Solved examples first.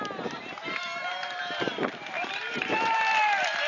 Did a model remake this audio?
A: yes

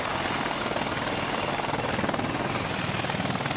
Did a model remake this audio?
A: no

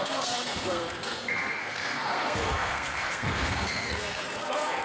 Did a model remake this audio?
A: yes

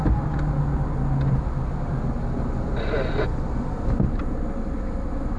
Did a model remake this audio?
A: no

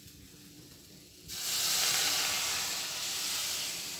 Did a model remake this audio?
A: no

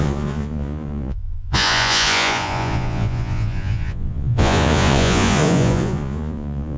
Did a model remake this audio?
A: yes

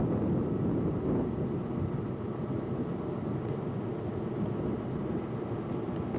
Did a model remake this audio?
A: no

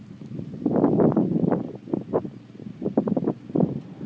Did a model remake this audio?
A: no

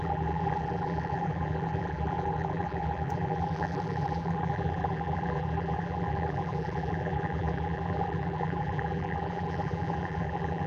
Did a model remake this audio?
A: yes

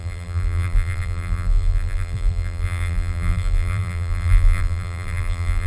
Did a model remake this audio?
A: yes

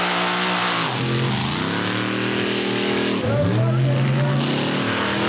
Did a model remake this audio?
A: no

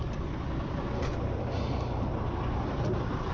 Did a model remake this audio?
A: no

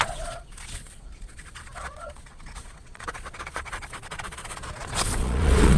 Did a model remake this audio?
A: yes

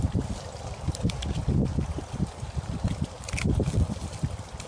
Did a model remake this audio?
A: no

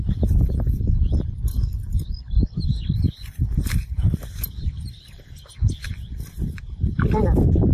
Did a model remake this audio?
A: yes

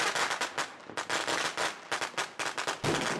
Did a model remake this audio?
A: no